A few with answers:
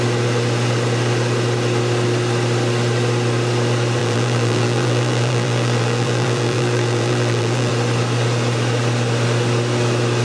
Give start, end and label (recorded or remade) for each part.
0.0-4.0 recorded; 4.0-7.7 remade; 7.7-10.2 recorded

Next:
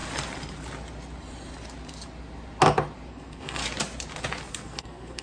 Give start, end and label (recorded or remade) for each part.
0.0-3.1 recorded; 3.1-3.6 remade; 3.6-4.5 recorded; 4.5-5.2 remade